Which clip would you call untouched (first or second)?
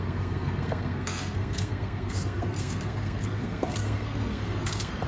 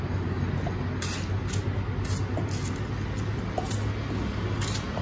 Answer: second